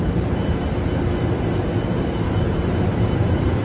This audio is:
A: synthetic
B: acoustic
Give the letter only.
A